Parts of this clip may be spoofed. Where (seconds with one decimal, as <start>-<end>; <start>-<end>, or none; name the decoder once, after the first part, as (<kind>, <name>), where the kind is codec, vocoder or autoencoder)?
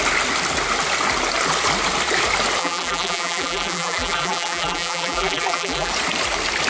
2.6-5.9 (vocoder, BigVGAN v2)